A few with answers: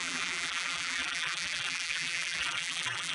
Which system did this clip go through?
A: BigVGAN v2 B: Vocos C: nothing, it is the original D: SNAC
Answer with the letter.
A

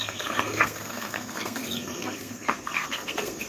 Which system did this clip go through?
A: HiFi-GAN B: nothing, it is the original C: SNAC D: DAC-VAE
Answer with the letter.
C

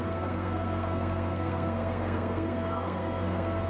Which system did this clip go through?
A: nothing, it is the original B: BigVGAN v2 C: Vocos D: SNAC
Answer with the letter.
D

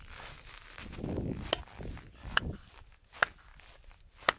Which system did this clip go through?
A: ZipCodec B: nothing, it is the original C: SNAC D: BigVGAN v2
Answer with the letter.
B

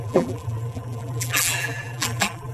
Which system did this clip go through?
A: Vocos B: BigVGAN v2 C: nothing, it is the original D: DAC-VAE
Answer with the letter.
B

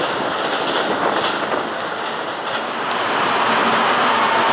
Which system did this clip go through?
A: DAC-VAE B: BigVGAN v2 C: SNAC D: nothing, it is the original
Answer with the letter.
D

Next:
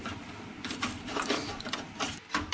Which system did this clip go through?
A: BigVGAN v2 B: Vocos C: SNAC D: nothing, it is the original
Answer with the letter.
D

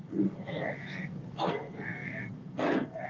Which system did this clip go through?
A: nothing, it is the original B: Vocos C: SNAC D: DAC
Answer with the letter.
C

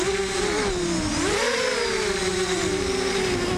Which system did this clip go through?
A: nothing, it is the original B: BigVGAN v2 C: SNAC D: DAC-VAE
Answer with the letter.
A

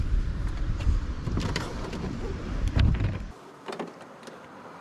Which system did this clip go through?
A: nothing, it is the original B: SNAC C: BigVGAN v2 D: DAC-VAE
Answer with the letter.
C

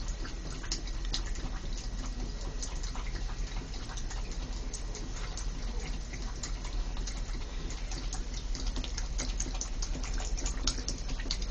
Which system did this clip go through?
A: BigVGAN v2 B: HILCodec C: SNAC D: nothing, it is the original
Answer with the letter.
D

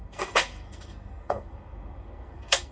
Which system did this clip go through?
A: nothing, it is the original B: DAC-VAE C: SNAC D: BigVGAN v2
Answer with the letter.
C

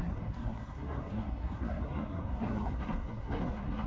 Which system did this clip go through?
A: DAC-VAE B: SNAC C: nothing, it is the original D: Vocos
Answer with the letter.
B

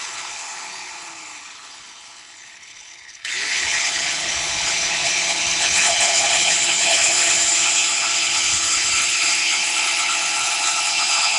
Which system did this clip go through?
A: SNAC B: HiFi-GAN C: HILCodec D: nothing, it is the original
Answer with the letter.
C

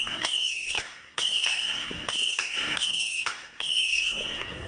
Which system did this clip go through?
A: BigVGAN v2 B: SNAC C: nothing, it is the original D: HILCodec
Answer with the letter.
B